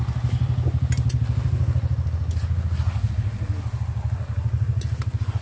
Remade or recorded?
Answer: recorded